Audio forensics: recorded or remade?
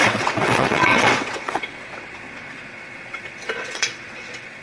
remade